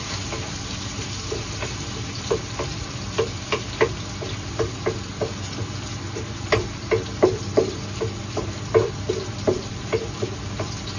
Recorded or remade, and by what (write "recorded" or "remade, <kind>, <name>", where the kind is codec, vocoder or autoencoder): remade, vocoder, BigVGAN v2